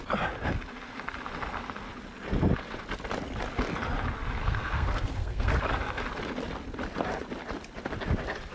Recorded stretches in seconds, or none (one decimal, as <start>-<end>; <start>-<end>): 0.0-4.4; 5.6-8.5